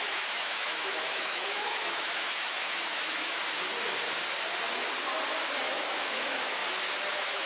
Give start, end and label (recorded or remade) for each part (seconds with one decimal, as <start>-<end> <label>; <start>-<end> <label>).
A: 0.0-3.4 remade; 3.4-5.6 recorded; 5.6-6.6 remade; 6.6-7.1 recorded; 7.1-7.5 remade